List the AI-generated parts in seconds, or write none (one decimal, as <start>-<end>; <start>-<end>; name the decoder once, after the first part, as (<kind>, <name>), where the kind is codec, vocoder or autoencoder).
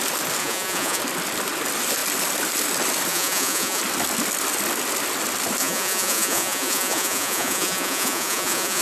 0.4-1.0 (vocoder, Vocos); 3.1-3.8; 5.6-8.8